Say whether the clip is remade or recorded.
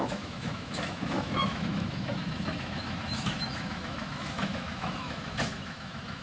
remade